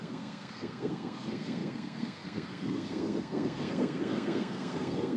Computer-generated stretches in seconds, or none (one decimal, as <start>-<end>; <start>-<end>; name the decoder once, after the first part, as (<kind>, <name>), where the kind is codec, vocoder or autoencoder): 0.0-5.2 (codec, SNAC)